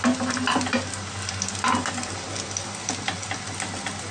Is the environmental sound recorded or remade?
recorded